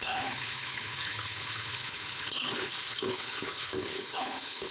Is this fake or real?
fake